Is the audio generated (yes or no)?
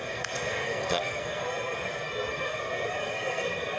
yes